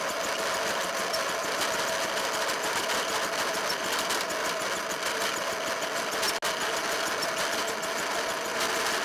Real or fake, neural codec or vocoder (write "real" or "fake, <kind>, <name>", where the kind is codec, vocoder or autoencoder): real